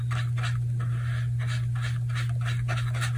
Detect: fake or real real